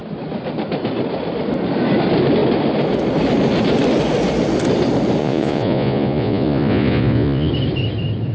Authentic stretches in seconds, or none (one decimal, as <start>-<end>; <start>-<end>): 0.0-5.2; 7.5-8.3